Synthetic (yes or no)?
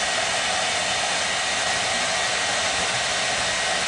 no